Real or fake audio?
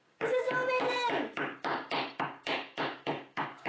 fake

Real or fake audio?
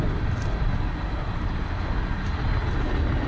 real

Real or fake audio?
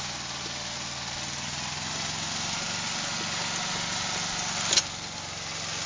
real